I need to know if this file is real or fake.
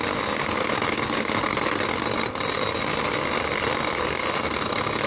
real